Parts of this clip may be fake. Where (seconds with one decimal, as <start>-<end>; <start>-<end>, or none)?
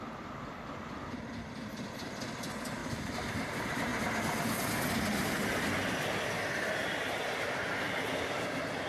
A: 2.8-3.5